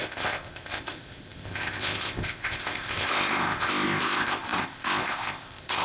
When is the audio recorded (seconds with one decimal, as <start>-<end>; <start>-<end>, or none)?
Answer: none